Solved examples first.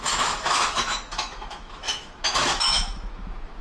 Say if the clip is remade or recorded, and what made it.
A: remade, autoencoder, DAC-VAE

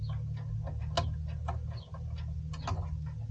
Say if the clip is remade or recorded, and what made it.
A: recorded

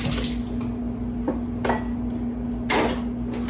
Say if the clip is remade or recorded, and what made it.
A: recorded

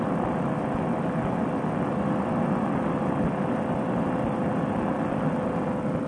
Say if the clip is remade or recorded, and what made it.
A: recorded